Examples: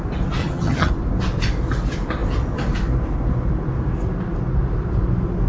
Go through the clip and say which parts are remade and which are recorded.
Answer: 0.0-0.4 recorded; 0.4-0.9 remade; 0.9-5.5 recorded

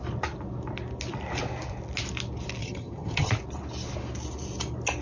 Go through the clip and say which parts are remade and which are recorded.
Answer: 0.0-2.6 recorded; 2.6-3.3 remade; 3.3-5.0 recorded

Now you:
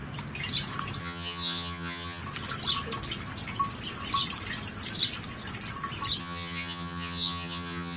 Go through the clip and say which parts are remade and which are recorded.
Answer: 0.0-1.0 recorded; 1.0-2.2 remade; 2.2-6.2 recorded; 6.2-8.0 remade